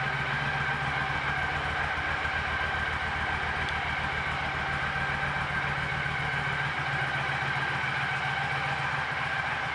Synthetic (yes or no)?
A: no